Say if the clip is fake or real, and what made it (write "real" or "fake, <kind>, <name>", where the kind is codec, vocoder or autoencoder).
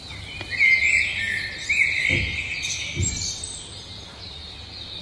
real